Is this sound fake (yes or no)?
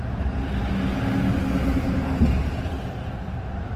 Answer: no